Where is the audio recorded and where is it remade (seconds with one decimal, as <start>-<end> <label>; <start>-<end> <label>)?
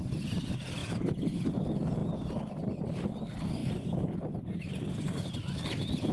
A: 0.0-2.0 recorded; 2.0-3.0 remade; 3.0-3.6 recorded; 3.6-4.9 remade; 4.9-6.1 recorded